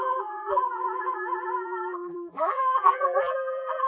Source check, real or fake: fake